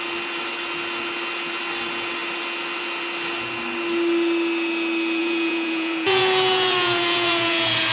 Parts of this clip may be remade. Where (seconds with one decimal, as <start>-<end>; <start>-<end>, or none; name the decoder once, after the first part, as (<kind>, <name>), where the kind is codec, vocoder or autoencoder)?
5.2-7.9 (vocoder, Vocos)